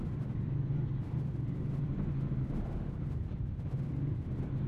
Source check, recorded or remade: remade